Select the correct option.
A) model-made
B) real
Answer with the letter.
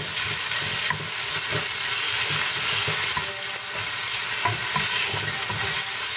B